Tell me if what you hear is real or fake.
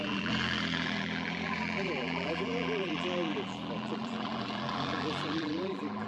fake